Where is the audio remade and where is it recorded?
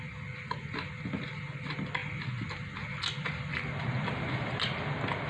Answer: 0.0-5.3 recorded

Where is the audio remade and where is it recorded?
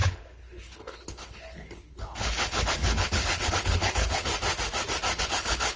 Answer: 0.0-4.3 remade; 4.3-5.2 recorded; 5.2-5.8 remade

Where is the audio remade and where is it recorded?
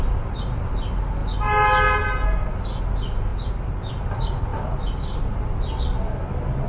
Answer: 0.0-6.7 recorded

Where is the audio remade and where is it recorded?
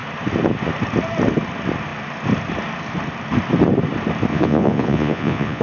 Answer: 0.0-4.3 recorded; 4.3-5.6 remade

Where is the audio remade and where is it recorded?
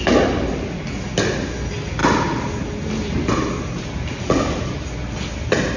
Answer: 0.0-5.8 recorded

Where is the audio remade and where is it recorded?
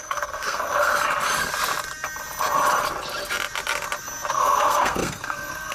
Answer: 0.0-0.9 remade; 0.9-4.3 recorded; 4.3-5.7 remade